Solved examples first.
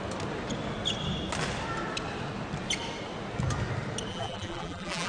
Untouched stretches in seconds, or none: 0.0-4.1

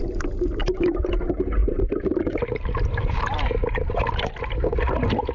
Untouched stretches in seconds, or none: 0.0-0.6; 1.1-1.6; 4.4-5.3

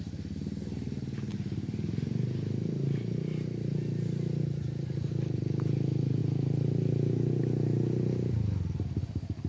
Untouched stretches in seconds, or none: 0.0-9.5

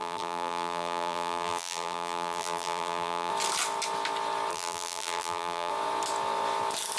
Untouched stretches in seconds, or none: 3.3-4.5; 5.7-7.0

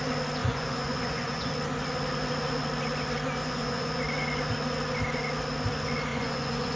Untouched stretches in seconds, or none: 0.0-0.4; 1.5-3.4; 4.0-6.1